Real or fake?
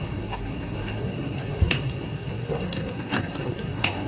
fake